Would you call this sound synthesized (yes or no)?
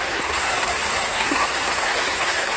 yes